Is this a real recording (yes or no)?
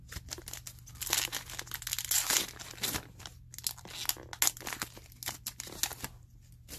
yes